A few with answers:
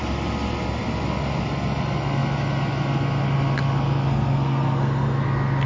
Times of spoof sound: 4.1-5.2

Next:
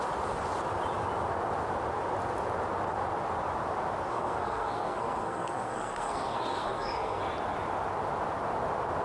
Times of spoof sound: 4.1-7.2

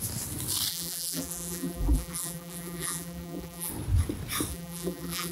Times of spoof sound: 0.7-3.7; 4.5-5.3